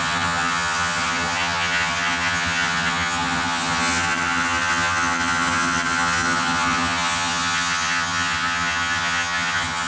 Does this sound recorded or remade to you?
remade